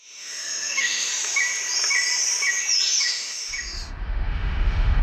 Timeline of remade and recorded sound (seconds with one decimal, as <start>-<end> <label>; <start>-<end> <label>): 0.0-1.1 remade; 1.1-3.0 recorded; 3.0-5.0 remade